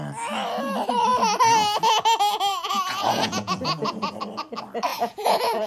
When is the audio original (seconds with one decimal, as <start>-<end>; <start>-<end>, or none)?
0.0-2.5; 4.2-4.9